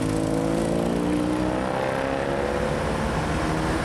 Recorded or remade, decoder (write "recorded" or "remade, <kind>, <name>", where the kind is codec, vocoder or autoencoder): recorded